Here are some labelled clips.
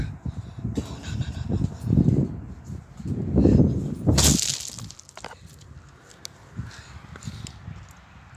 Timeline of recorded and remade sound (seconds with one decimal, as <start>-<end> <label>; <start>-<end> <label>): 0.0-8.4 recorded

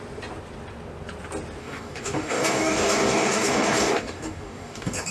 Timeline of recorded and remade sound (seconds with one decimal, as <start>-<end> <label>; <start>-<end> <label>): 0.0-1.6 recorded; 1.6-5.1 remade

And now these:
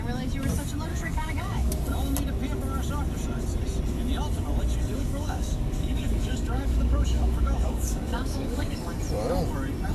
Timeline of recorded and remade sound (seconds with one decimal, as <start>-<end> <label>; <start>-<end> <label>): 0.0-0.9 recorded; 0.9-1.7 remade; 1.7-4.9 recorded; 4.9-8.9 remade; 8.9-9.9 recorded